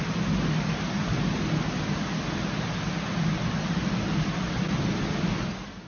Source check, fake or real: real